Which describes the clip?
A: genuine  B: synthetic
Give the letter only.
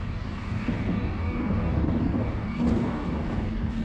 B